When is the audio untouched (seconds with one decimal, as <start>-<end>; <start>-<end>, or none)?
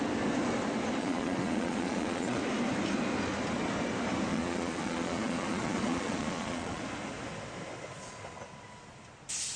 0.0-1.0; 2.4-4.3; 6.8-9.6